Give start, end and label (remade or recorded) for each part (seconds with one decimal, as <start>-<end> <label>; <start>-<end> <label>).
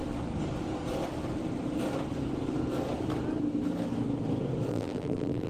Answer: 0.0-4.7 recorded; 4.7-5.5 remade